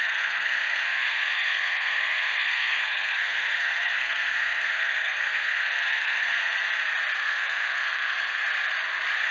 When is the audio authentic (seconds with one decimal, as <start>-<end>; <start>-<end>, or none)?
6.4-7.2; 8.4-9.3